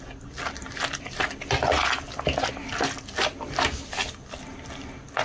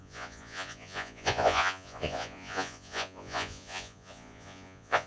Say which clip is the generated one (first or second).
second